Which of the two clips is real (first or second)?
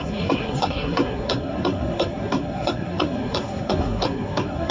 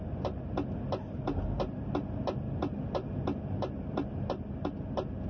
second